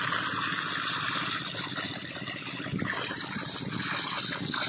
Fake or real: real